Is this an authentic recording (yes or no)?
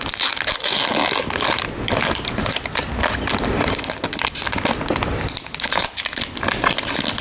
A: yes